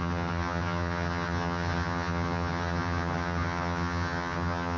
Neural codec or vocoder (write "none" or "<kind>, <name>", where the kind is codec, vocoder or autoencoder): vocoder, HiFi-GAN